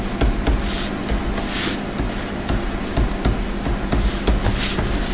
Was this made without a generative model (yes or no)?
yes